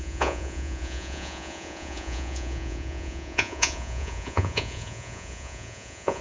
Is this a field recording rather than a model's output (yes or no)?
no